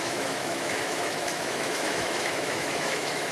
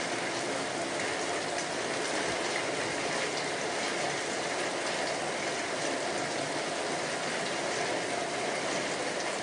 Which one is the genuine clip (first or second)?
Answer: second